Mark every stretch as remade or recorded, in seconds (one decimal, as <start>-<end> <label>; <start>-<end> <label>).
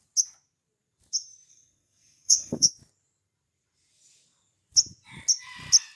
0.0-1.5 recorded; 1.5-2.7 remade; 2.7-6.0 recorded